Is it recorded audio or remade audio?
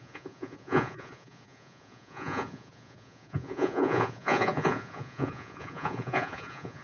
remade